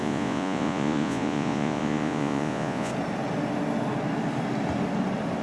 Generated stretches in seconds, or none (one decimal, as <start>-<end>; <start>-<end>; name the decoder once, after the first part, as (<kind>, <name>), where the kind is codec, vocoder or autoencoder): 0.0-2.9 (vocoder, Vocos)